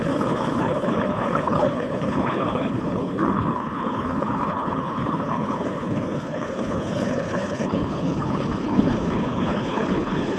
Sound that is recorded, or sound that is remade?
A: remade